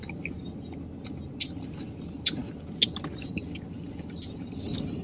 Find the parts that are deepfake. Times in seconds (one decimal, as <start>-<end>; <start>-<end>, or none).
none